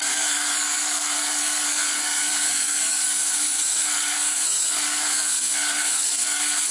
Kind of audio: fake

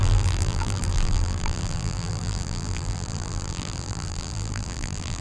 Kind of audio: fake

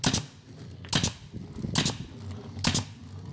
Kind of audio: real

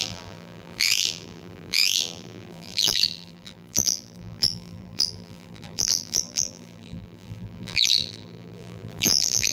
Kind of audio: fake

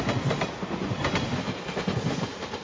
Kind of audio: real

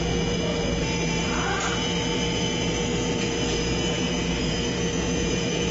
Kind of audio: fake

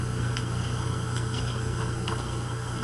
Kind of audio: fake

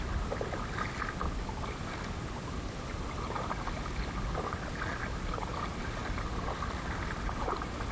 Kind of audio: real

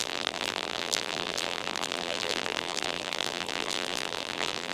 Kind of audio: fake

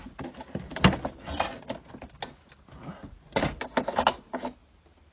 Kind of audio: real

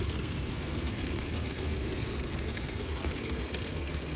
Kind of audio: fake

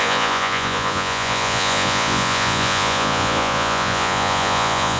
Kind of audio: fake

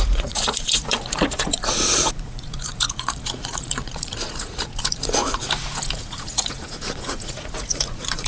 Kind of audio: fake